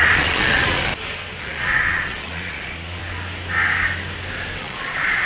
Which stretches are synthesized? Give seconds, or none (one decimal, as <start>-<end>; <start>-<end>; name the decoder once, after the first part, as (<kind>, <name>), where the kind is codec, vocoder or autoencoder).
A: 0.0-0.9 (vocoder, Vocos); 1.4-3.0; 4.6-5.3